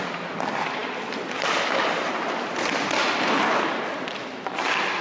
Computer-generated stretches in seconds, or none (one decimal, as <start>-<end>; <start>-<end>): none